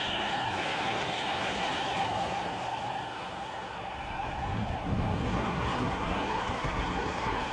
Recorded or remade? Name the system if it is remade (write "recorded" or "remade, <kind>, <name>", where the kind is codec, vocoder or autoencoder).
remade, codec, SNAC